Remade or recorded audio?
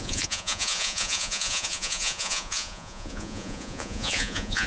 remade